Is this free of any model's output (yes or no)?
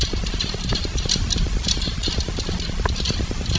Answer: yes